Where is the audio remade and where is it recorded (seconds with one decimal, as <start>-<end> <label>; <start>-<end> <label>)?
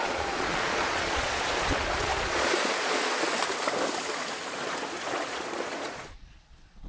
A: 0.0-3.3 remade; 3.3-4.1 recorded; 4.1-6.9 remade